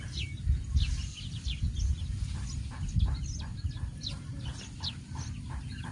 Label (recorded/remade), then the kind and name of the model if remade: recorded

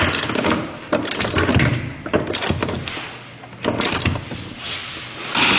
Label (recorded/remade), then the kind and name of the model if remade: recorded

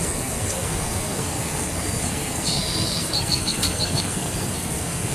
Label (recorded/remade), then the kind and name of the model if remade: remade, codec, SNAC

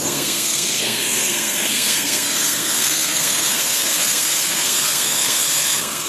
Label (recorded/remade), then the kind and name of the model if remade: remade, codec, SNAC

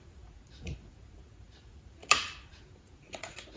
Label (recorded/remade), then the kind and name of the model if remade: remade, vocoder, Vocos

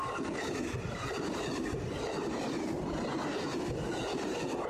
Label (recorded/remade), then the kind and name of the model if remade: recorded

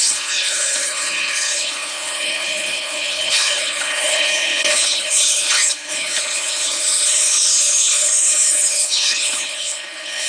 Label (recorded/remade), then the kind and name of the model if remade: remade, codec, HILCodec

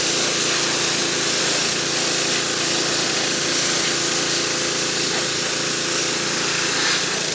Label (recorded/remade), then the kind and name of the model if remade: recorded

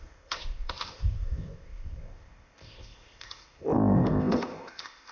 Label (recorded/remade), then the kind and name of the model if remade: remade, codec, ZipCodec